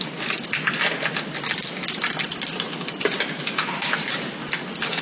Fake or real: real